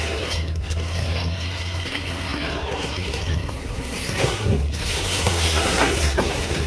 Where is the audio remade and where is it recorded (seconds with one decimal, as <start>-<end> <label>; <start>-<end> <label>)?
0.0-6.7 remade